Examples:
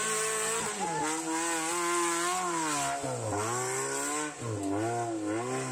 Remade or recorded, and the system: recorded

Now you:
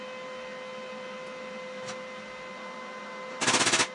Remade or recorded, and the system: recorded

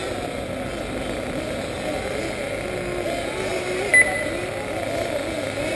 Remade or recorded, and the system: recorded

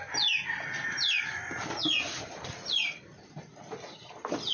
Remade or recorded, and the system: recorded